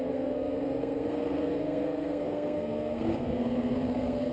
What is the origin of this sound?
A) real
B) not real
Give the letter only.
B